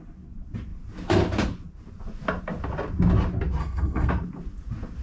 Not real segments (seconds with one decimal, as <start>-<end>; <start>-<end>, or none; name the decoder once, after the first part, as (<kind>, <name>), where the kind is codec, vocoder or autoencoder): 3.6-4.1 (codec, SNAC)